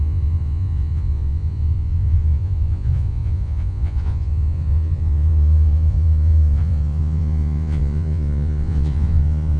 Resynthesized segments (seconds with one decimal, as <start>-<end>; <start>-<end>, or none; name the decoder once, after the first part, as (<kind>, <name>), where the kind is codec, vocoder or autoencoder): 0.0-9.6 (vocoder, Vocos)